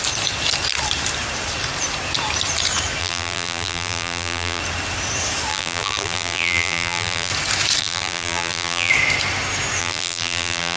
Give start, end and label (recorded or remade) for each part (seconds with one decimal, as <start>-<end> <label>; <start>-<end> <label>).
0.0-3.0 recorded; 3.0-4.6 remade; 4.6-5.5 recorded; 5.5-7.3 remade; 7.3-7.8 recorded; 7.8-8.9 remade; 8.9-9.8 recorded; 9.8-10.8 remade